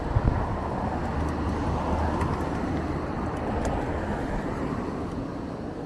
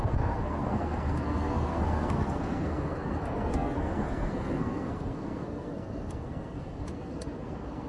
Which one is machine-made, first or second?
second